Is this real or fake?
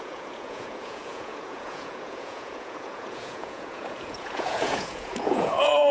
fake